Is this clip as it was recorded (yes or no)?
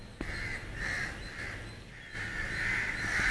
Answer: yes